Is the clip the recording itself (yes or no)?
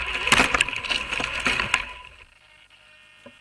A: yes